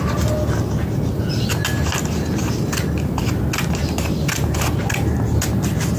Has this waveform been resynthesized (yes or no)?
no